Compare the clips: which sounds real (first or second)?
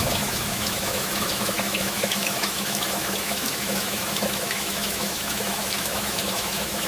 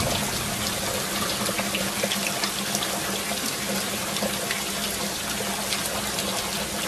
second